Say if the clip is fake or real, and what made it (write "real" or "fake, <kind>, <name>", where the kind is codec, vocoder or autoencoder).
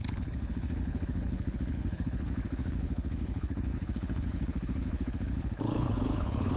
fake, codec, HILCodec